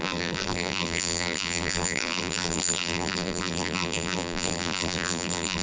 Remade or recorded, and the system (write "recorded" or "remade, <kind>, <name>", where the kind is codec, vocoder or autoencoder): remade, vocoder, BigVGAN v2